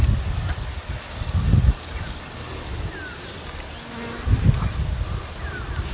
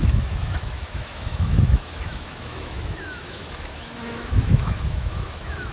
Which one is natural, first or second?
first